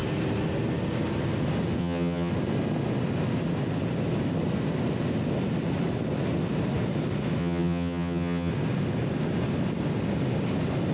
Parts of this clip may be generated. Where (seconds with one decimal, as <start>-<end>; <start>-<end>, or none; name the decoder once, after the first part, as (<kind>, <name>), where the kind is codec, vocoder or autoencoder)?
1.8-2.3 (vocoder, HiFi-GAN); 7.4-8.5